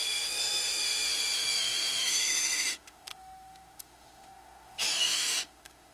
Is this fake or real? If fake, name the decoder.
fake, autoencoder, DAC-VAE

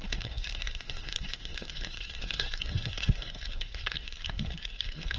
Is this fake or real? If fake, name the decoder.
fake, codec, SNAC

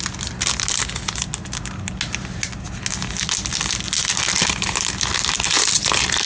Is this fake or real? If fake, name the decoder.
real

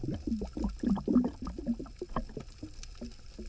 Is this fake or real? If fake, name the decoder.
real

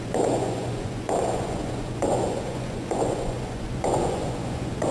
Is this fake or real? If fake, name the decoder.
fake, vocoder, Vocos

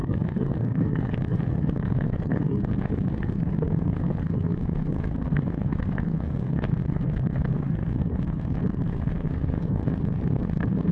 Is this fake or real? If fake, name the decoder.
fake, codec, SNAC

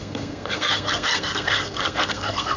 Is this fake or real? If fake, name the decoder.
fake, codec, SNAC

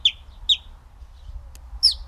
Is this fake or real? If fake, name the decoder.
real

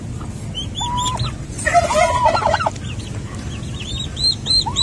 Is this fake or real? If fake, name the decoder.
real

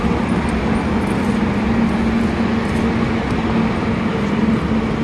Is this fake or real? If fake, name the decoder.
real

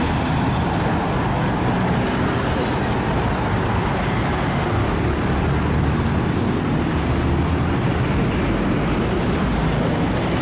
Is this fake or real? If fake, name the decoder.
real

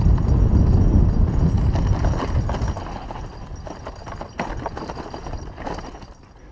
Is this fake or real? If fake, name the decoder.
real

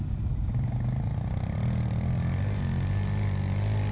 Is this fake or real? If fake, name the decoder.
real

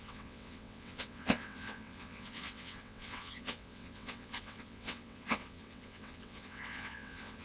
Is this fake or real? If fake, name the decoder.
fake, vocoder, WaveNeXt